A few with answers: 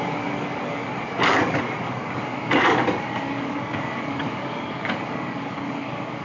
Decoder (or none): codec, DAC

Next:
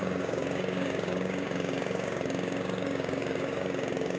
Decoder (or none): codec, DAC